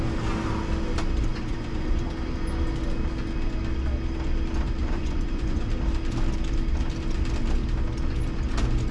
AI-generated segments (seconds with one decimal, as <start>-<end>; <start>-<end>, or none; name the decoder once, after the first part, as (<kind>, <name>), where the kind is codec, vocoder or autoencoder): 1.3-2.1 (vocoder, Vocos); 4.8-5.7